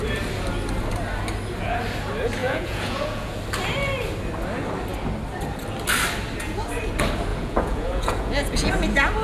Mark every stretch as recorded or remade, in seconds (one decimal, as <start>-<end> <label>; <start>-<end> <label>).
0.0-2.4 recorded; 2.4-3.4 remade; 3.4-7.3 recorded; 7.3-8.7 remade; 8.7-9.2 recorded